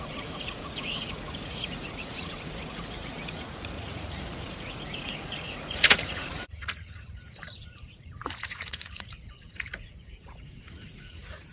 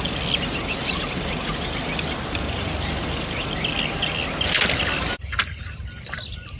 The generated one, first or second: first